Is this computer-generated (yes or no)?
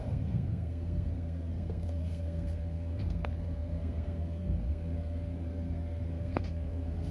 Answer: yes